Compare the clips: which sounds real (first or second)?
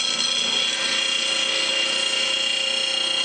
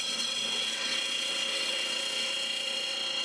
first